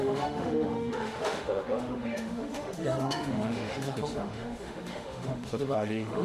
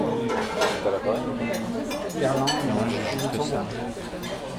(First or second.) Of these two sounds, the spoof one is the first